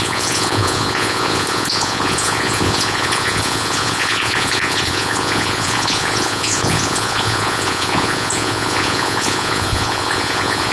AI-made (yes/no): yes